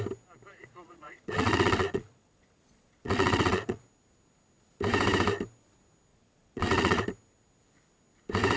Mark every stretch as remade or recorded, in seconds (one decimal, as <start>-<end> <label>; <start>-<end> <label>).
0.0-0.5 recorded; 0.5-3.8 remade; 3.8-6.1 recorded; 6.1-7.0 remade; 7.0-8.6 recorded